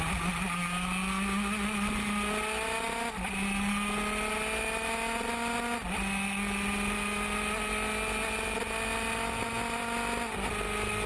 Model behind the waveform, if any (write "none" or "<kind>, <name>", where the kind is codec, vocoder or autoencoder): none